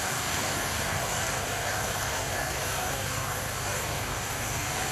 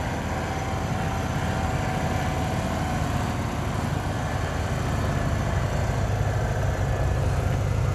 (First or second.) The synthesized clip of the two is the first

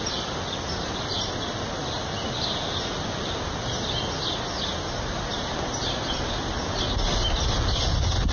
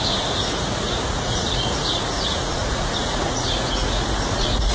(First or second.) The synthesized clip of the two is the second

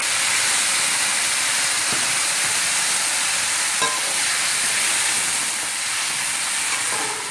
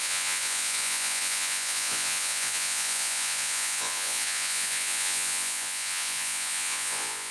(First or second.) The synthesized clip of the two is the second